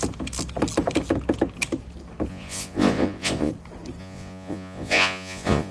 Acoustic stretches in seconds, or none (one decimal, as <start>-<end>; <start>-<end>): 0.0-2.3; 3.5-4.0